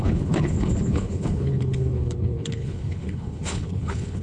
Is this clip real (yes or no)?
no